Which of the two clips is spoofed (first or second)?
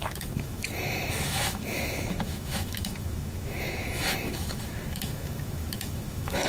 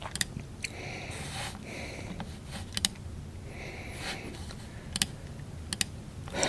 first